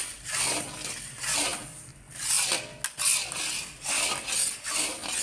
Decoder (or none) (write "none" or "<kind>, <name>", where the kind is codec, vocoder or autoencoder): none